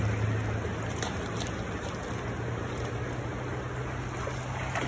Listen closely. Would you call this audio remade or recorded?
recorded